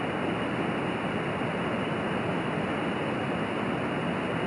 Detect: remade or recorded recorded